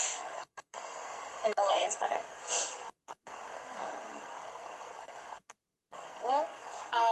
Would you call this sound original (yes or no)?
no